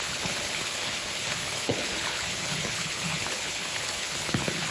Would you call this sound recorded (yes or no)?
no